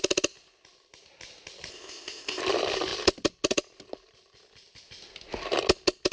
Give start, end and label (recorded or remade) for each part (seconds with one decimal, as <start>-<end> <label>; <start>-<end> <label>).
0.0-1.7 recorded; 1.7-2.4 remade; 2.4-6.1 recorded